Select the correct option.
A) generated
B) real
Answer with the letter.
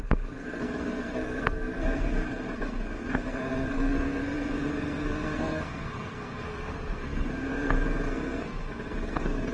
A